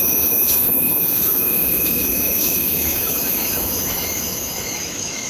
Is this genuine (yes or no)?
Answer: no